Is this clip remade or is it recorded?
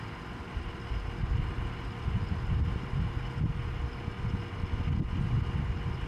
recorded